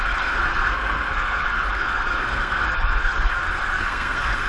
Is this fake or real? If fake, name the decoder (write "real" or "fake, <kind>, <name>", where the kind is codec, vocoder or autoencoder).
fake, codec, SNAC